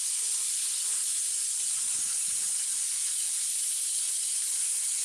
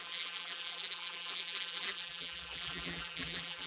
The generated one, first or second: second